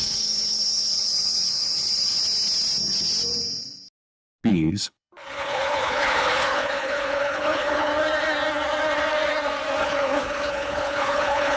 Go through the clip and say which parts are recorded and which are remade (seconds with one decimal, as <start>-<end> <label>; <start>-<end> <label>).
0.0-2.2 remade; 2.2-4.5 recorded; 4.5-7.9 remade; 7.9-9.8 recorded; 9.8-11.6 remade